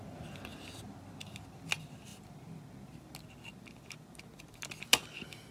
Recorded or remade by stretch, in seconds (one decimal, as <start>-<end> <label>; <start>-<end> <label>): 0.0-5.5 recorded